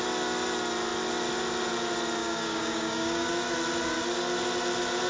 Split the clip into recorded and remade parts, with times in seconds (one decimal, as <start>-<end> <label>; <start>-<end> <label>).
0.0-2.2 recorded; 2.2-3.3 remade; 3.3-5.1 recorded